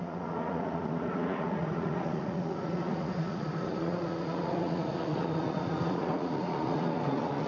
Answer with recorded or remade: remade